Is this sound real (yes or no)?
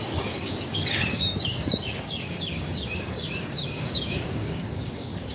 no